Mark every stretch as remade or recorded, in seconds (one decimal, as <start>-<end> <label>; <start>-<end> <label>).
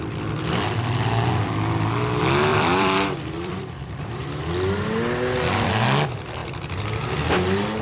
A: 0.0-2.5 recorded; 2.5-4.4 remade; 4.4-7.8 recorded